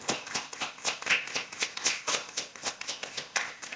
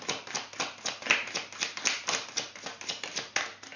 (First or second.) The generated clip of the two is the first